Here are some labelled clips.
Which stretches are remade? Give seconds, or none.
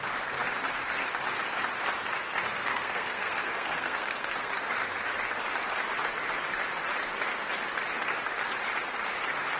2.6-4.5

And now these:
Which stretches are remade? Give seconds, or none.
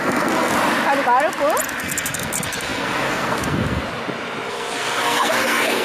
0.0-0.5; 1.8-3.8; 4.5-5.8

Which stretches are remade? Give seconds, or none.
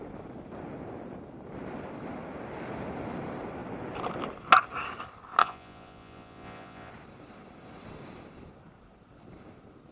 5.4-6.9